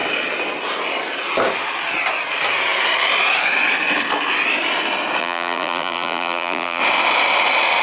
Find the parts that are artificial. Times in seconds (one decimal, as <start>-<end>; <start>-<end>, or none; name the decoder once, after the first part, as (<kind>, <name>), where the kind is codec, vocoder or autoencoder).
5.2-6.8 (vocoder, BigVGAN v2)